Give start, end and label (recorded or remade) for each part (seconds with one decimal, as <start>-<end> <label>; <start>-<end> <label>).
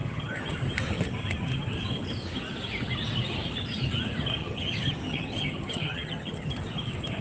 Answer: 0.0-0.5 remade; 0.5-4.4 recorded; 4.4-6.5 remade; 6.5-7.2 recorded